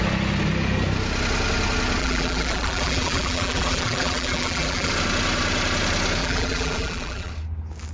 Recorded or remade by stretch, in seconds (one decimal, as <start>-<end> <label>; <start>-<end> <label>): 0.0-2.0 recorded; 2.0-4.9 remade; 4.9-6.2 recorded; 6.2-7.3 remade; 7.3-7.9 recorded